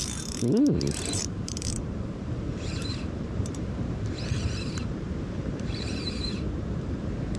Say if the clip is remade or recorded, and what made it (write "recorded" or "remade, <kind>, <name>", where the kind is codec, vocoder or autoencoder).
remade, vocoder, BigVGAN v2